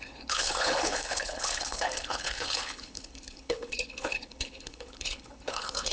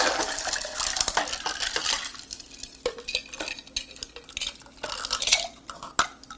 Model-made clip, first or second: first